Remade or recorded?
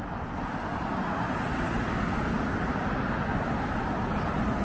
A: recorded